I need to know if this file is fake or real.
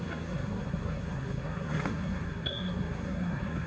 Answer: fake